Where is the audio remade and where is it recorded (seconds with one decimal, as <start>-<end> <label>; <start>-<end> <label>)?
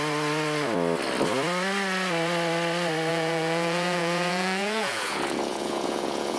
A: 0.0-3.1 recorded; 3.1-6.4 remade